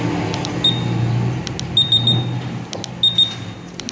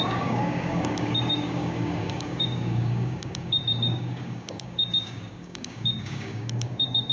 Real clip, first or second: first